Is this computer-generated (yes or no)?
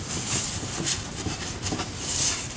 yes